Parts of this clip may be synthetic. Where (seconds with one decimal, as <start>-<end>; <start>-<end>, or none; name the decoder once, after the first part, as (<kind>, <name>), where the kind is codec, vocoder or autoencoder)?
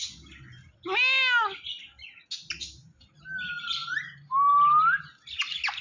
none